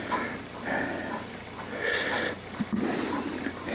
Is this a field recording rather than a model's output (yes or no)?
yes